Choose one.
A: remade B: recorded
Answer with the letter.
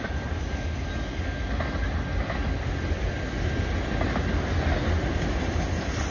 B